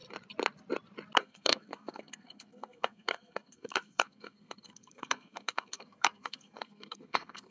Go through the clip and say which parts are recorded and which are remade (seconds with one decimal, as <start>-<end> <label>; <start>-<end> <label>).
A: 0.0-1.2 recorded; 1.2-7.5 remade